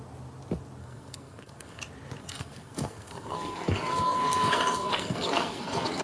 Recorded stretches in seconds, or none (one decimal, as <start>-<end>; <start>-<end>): 0.0-0.8; 1.8-2.2